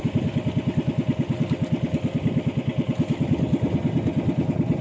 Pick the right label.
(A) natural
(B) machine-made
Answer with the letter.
A